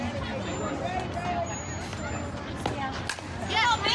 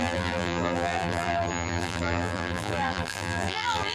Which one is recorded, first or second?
first